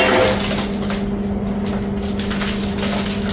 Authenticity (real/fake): real